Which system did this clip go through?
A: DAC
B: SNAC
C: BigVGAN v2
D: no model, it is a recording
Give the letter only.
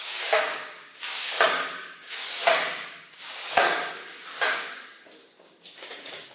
A